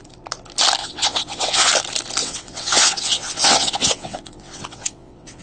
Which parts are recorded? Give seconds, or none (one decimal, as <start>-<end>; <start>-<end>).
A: 0.0-0.8; 1.7-2.2